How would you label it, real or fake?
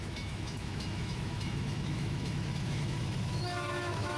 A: fake